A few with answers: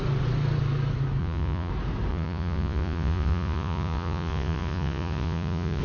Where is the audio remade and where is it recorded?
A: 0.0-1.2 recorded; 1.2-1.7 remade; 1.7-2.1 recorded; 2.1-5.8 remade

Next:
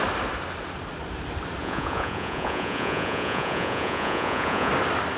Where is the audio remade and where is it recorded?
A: 0.0-1.6 recorded; 1.6-4.7 remade; 4.7-5.2 recorded

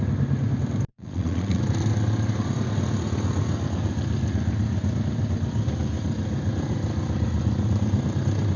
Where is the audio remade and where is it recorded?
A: 0.0-0.9 recorded; 0.9-1.6 remade; 1.6-8.6 recorded

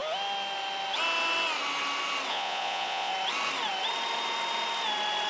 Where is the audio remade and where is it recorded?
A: 0.0-2.3 recorded; 2.3-3.1 remade; 3.1-5.3 recorded